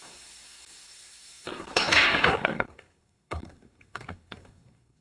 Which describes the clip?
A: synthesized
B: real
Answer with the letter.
A